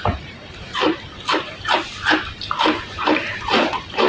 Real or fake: fake